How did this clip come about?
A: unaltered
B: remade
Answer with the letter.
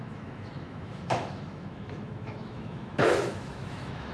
B